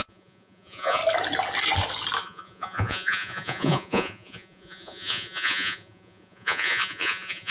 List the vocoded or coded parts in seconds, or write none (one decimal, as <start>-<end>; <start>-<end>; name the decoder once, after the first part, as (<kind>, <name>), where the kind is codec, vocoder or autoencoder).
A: 0.0-1.0 (vocoder, Vocos); 2.2-7.5